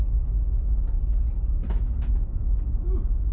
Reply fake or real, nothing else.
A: real